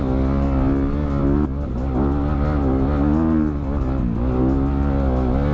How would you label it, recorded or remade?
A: recorded